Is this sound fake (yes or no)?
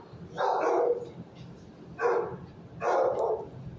yes